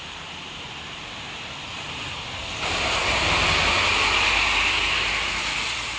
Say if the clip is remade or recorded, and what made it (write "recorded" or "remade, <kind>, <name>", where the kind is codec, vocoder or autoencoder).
recorded